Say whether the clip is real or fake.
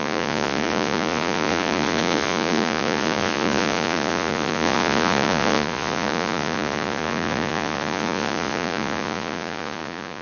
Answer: fake